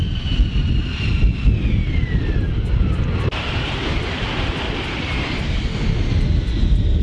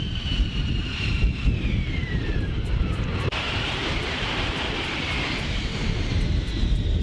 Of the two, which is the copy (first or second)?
second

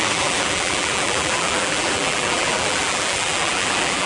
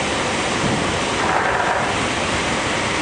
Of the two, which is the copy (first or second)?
first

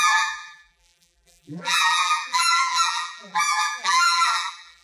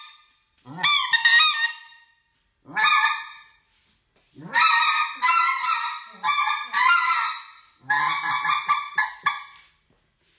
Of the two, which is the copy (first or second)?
first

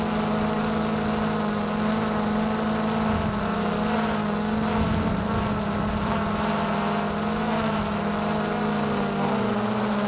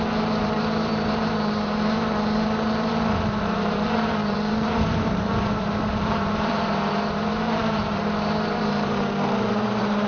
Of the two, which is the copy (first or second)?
second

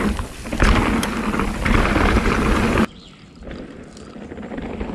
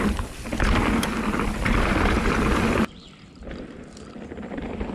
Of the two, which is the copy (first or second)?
second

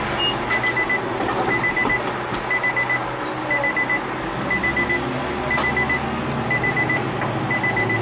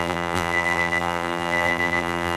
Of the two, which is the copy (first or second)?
second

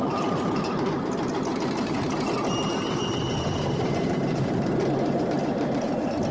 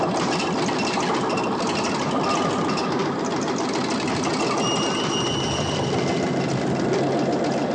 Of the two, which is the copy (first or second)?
first